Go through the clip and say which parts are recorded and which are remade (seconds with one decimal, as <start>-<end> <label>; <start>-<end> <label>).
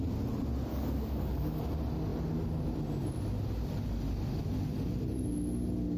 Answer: 0.0-0.7 recorded; 0.7-1.6 remade; 1.6-6.0 recorded